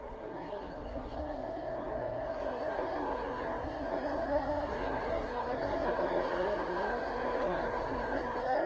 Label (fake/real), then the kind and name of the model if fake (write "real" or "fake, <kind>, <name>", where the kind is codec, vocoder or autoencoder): fake, codec, SNAC